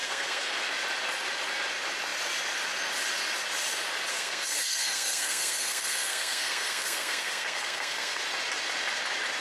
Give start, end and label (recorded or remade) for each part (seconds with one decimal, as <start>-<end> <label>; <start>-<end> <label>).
0.0-0.7 remade; 0.7-4.1 recorded; 4.1-8.2 remade; 8.2-9.4 recorded